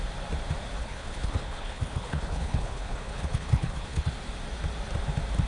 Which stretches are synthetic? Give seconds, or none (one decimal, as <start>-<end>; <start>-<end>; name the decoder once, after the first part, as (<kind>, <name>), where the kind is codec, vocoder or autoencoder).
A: 0.8-4.1 (codec, HILCodec)